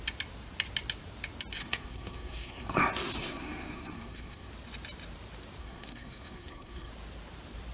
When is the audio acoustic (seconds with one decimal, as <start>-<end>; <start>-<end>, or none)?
0.0-1.6; 2.8-3.2; 4.5-5.6; 6.9-7.7